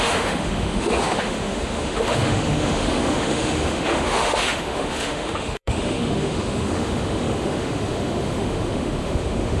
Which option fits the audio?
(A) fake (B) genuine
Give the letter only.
A